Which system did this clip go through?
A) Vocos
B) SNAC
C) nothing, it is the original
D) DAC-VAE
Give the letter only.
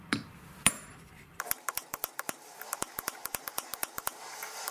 C